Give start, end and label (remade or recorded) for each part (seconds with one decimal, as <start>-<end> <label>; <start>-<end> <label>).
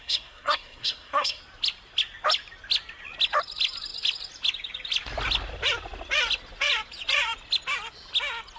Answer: 0.0-1.4 remade; 1.4-8.6 recorded